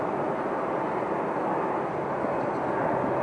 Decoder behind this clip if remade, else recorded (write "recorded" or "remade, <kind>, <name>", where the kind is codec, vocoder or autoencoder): recorded